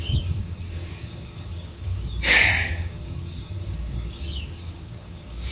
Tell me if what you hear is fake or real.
fake